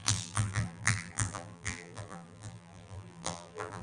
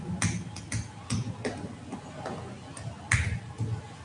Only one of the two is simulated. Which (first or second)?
first